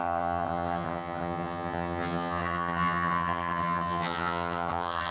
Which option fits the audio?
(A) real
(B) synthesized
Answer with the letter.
B